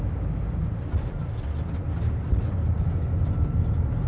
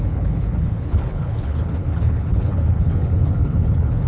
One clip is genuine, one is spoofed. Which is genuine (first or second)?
first